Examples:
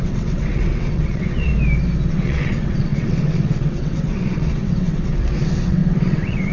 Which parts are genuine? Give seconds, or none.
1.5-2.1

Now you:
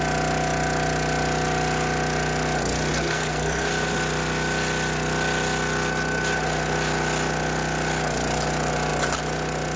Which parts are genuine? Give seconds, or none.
0.0-2.9; 3.7-9.8

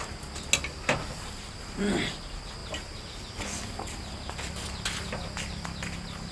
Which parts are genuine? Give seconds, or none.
0.0-6.3

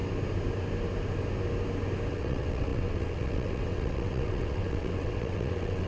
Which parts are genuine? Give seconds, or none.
0.0-2.1

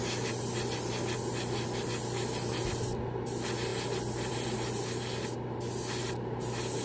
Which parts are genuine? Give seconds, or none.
0.0-6.8

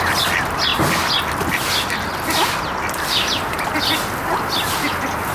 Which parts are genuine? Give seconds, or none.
0.0-5.3

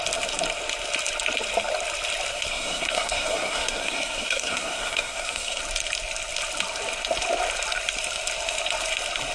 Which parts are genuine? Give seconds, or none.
0.0-2.3; 5.6-9.3

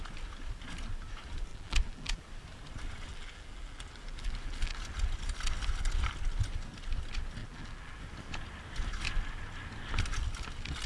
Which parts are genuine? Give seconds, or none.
0.0-1.5; 2.2-3.1; 4.8-7.4; 8.0-10.9